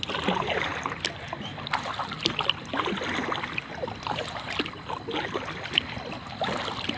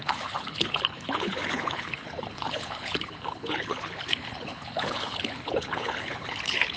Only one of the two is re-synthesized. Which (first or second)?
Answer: second